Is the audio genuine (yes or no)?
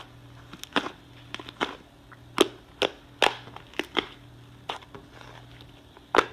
yes